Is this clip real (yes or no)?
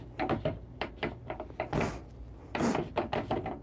yes